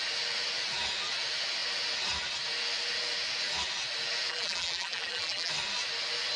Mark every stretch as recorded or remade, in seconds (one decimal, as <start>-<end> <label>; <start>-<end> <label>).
0.0-4.3 recorded; 4.3-5.5 remade; 5.5-6.4 recorded